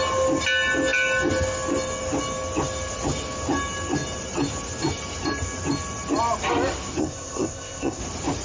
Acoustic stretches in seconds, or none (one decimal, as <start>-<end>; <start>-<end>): 0.0-7.0; 8.0-8.4